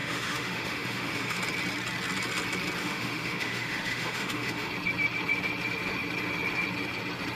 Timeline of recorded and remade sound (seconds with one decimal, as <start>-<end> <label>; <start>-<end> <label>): 0.0-1.4 remade; 1.4-2.8 recorded; 2.8-4.7 remade; 4.7-7.4 recorded